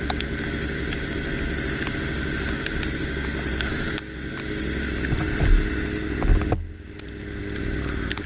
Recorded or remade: recorded